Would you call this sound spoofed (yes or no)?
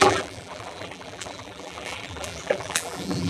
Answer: yes